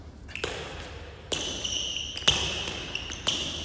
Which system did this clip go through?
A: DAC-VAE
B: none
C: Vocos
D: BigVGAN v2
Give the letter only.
B